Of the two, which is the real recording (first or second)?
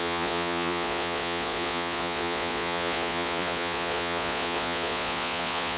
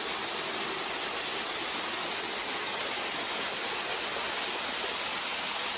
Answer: second